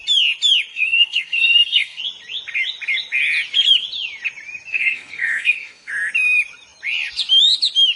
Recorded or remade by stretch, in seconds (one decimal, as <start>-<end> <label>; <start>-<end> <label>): 0.0-0.7 recorded; 0.7-2.0 remade; 2.0-4.7 recorded; 4.7-5.9 remade; 5.9-8.0 recorded